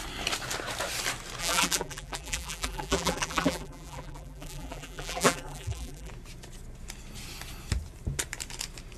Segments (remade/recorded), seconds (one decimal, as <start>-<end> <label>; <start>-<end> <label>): 0.0-1.4 recorded; 1.4-6.1 remade; 6.1-9.0 recorded